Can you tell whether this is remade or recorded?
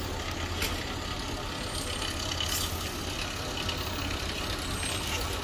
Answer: recorded